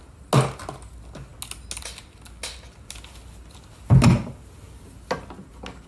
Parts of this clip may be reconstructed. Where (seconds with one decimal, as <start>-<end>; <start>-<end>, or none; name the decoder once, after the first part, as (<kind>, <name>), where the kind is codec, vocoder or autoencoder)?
none